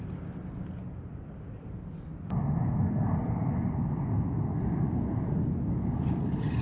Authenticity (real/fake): real